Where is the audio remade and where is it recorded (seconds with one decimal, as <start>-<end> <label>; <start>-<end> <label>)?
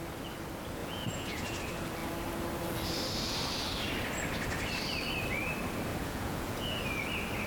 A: 0.0-0.8 recorded; 0.8-1.6 remade; 1.6-5.9 recorded; 5.9-6.8 remade; 6.8-7.5 recorded